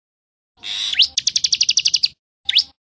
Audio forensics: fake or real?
real